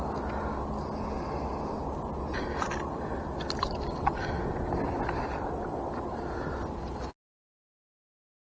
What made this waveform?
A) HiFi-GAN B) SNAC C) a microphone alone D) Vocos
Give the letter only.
C